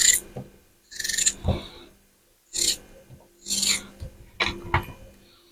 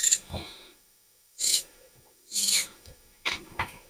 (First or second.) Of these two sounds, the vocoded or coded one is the second